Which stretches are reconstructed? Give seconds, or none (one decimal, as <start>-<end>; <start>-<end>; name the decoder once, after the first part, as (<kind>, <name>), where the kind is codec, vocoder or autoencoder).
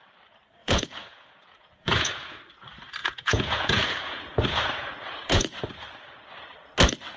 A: 0.6-2.4 (vocoder, Vocos); 3.0-5.6